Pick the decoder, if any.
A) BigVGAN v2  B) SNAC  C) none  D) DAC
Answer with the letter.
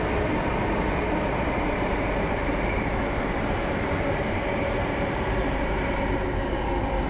A